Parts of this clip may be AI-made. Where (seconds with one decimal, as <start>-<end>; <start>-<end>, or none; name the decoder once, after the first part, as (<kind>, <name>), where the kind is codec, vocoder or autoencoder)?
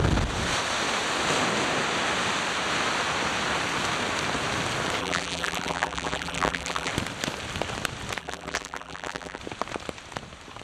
5.0-6.9 (vocoder, BigVGAN v2); 8.2-9.4